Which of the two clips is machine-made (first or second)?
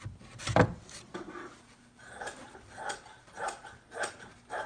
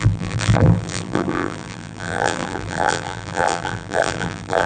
second